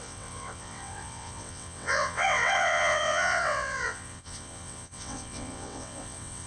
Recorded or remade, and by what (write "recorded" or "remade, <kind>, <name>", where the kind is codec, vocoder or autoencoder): remade, vocoder, WaveNeXt